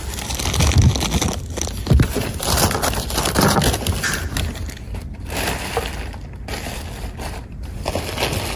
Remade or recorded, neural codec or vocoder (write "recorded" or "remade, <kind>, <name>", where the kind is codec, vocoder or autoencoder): recorded